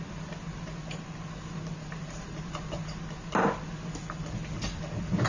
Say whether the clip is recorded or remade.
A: recorded